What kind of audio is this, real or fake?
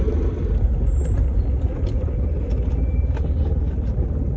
real